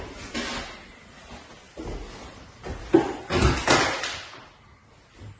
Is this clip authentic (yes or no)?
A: yes